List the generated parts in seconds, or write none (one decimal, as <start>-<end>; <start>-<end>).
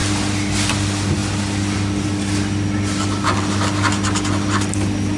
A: none